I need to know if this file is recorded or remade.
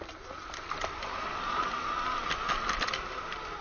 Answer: recorded